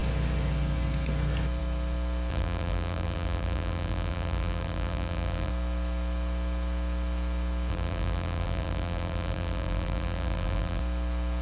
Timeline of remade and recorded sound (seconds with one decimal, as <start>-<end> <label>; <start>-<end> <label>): 0.0-2.3 recorded; 2.3-5.5 remade; 5.5-7.7 recorded; 7.7-10.8 remade; 10.8-11.4 recorded

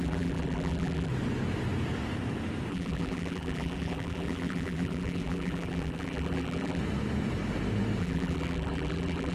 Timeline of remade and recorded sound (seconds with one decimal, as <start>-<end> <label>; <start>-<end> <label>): 0.0-1.1 remade; 1.1-2.7 recorded; 2.7-6.8 remade; 6.8-8.0 recorded; 8.0-9.3 remade

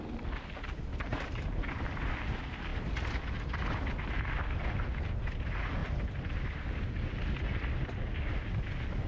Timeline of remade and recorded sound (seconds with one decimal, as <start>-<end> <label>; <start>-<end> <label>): 0.0-0.9 recorded; 0.9-2.1 remade; 2.1-5.8 recorded; 5.8-7.2 remade; 7.2-9.1 recorded

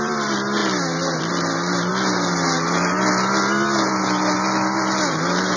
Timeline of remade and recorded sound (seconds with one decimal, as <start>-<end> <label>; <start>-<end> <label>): 0.0-0.6 remade; 0.6-1.2 recorded; 1.2-1.9 remade; 1.9-5.6 recorded

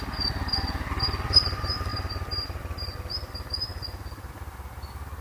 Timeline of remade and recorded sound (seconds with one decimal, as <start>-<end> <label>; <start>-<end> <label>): 0.0-5.2 recorded

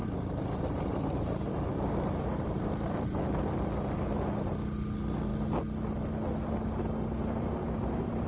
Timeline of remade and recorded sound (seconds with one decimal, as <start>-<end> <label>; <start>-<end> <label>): 0.0-3.2 remade; 3.2-7.6 recorded; 7.6-8.3 remade